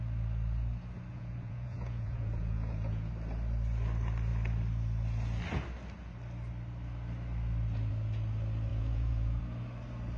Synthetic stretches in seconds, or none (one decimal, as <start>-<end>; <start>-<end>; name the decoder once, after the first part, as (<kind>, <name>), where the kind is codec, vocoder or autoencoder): 1.1-3.1 (vocoder, Vocos); 8.7-9.4